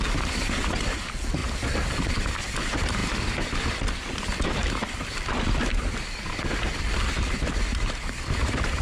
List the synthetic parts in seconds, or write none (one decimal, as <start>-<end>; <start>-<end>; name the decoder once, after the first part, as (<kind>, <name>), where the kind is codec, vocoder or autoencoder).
none